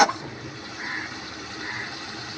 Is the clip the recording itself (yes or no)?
no